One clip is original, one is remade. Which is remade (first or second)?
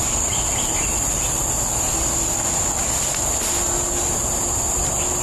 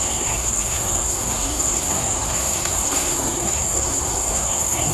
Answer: second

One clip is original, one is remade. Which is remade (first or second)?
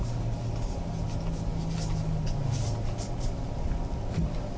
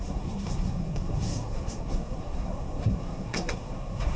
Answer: second